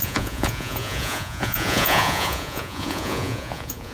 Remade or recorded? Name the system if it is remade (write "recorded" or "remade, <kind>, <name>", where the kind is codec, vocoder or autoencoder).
remade, vocoder, Vocos